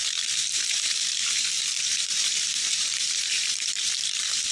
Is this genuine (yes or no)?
no